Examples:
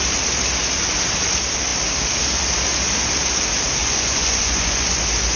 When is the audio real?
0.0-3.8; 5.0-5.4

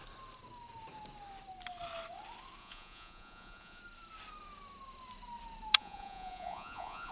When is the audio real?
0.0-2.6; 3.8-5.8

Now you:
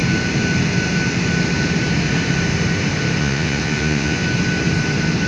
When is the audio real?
0.0-3.2; 4.2-5.3